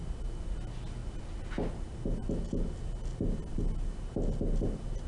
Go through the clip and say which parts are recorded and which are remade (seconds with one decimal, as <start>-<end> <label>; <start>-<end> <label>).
0.0-5.1 recorded